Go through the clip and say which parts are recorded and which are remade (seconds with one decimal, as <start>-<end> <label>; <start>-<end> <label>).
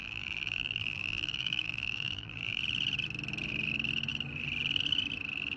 0.0-2.6 remade; 2.6-5.6 recorded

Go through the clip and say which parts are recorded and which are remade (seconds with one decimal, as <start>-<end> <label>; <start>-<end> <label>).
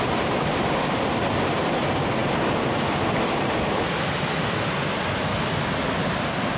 0.0-6.6 recorded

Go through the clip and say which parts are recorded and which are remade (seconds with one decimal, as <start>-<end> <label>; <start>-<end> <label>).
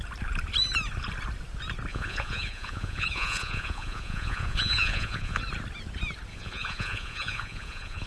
0.0-1.9 recorded; 1.9-5.4 remade; 5.4-6.3 recorded; 6.3-8.1 remade